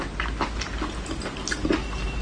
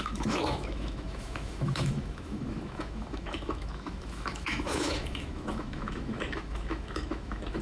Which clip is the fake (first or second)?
second